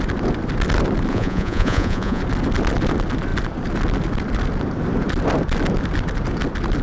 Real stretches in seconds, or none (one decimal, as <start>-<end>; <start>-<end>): 0.0-1.1; 2.2-6.8